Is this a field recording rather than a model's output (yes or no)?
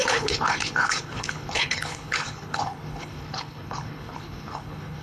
no